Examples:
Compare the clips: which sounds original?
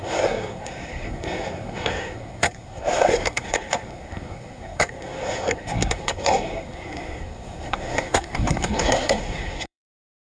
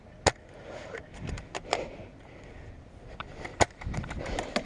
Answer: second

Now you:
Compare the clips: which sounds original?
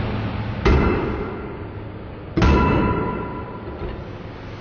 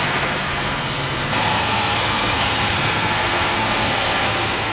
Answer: first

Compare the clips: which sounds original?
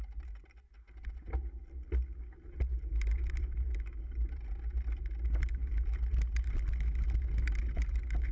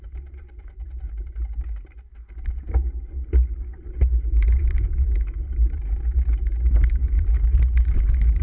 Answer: first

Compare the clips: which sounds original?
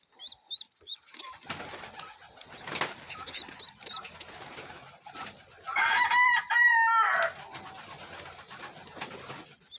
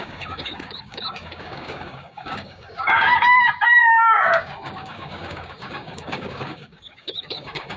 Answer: first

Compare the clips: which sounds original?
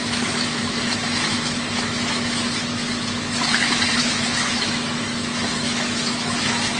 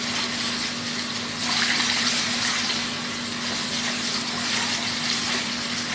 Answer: second